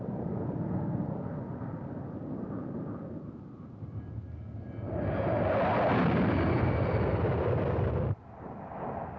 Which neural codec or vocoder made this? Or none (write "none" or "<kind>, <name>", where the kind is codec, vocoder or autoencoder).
none